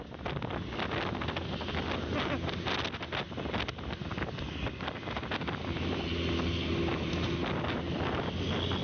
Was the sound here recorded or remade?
recorded